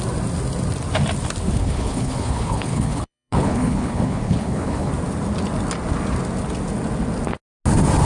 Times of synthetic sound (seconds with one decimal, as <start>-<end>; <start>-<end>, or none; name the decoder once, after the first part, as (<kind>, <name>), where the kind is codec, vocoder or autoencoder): 1.6-4.9 (codec, HILCodec)